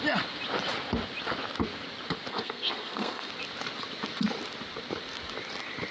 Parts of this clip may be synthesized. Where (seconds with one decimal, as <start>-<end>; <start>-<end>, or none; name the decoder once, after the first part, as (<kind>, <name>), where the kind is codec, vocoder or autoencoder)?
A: 2.3-3.3 (codec, SNAC)